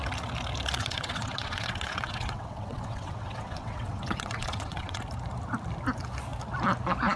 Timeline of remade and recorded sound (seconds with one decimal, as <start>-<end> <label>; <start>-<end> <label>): 0.0-0.8 recorded; 0.8-5.0 remade; 5.0-7.2 recorded